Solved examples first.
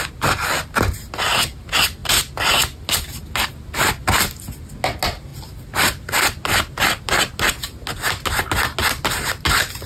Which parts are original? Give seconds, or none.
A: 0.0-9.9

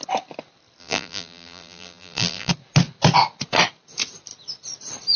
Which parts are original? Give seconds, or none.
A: 0.0-0.8; 2.5-5.2

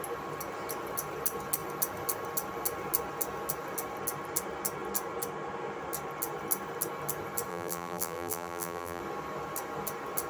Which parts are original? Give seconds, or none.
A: 0.0-7.5; 9.0-10.3

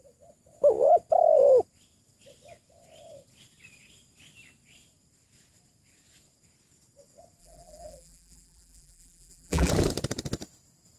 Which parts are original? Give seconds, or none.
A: 0.0-7.4; 9.7-11.0